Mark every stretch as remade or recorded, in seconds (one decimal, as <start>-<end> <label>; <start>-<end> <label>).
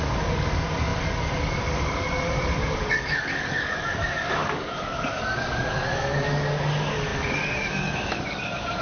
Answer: 0.0-8.8 remade